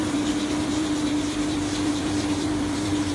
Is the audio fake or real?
fake